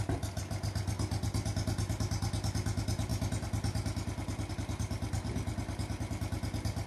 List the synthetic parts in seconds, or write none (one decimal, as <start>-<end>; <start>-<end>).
none